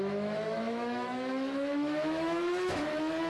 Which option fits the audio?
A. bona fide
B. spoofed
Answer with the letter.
B